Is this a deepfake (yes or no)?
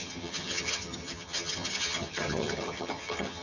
yes